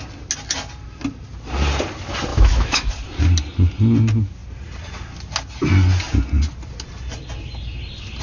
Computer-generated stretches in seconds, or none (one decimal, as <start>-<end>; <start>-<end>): 2.3-2.9